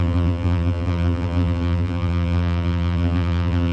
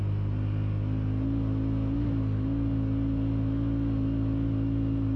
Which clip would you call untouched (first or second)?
second